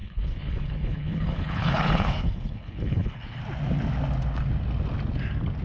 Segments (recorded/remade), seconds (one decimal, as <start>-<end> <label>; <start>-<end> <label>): 0.0-3.4 remade; 3.4-5.6 recorded